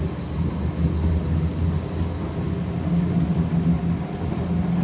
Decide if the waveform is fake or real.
real